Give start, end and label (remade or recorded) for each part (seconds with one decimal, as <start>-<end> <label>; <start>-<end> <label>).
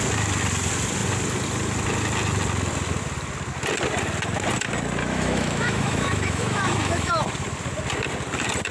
0.0-5.0 recorded; 5.0-7.1 remade; 7.1-8.7 recorded